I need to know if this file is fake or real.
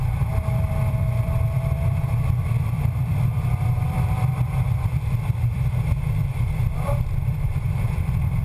fake